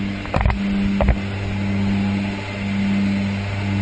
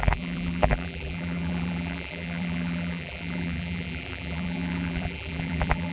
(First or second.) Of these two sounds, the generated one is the second